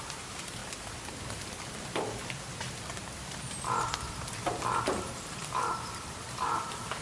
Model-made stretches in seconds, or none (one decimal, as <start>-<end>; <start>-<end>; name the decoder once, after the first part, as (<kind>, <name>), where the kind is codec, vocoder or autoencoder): 0.0-0.6 (vocoder, BigVGAN v2); 4.8-7.0